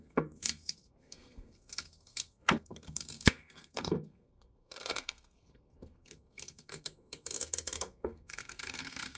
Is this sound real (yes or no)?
no